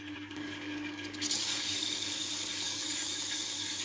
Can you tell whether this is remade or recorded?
remade